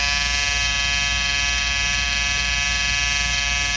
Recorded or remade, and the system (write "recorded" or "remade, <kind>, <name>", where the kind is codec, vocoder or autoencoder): recorded